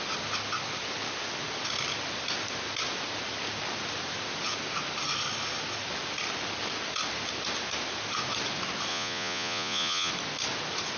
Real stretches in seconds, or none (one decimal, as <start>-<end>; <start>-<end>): 0.0-8.9; 10.1-11.0

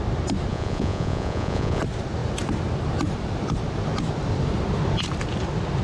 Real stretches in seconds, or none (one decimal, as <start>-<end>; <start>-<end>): 0.0-0.5; 1.8-5.8

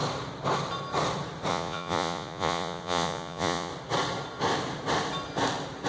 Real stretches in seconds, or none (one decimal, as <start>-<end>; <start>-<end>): 0.0-1.5; 3.7-5.9

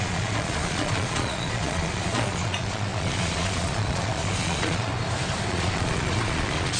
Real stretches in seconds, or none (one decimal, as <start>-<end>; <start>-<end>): 4.9-5.5

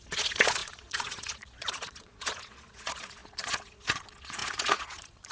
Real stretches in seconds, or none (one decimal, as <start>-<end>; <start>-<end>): none

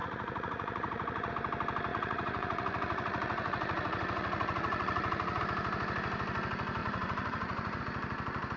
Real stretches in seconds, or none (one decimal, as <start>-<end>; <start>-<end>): 1.3-1.9; 5.4-6.8; 7.8-8.6

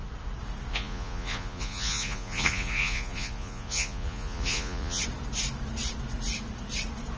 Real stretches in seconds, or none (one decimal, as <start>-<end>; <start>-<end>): 0.0-0.7; 5.0-7.2

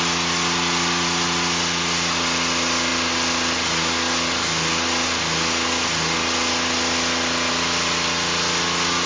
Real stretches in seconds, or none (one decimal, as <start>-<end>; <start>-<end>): 0.0-9.1